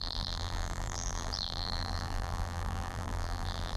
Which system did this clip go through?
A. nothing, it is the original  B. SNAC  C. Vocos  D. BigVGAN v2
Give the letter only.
D